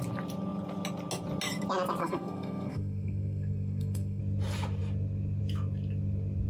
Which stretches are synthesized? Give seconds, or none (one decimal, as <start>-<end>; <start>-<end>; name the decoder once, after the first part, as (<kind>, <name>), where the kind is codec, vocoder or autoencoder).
2.0-4.2 (codec, SNAC)